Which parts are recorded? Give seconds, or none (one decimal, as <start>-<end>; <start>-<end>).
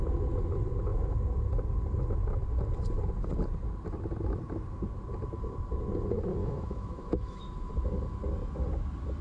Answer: 0.0-6.4; 7.7-9.2